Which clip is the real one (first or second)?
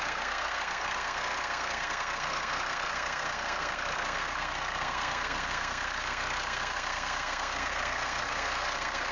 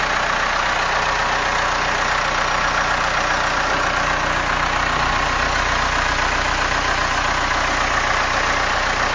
second